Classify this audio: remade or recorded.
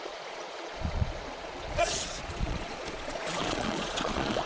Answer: remade